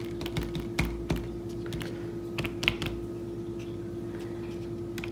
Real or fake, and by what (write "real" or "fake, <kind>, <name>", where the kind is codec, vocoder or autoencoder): real